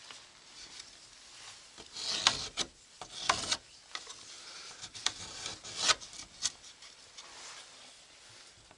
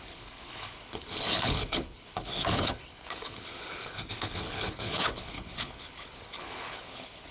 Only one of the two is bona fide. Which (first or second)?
first